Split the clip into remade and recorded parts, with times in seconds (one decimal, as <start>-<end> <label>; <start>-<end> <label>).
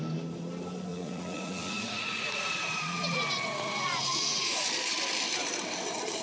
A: 0.0-0.9 recorded; 0.9-4.6 remade; 4.6-6.2 recorded